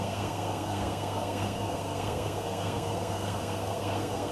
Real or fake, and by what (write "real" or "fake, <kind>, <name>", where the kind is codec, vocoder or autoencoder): fake, codec, SNAC